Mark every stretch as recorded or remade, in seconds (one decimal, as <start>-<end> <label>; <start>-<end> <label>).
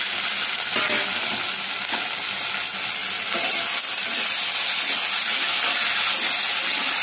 0.0-7.0 recorded